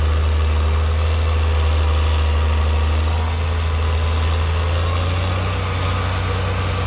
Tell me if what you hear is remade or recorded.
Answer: recorded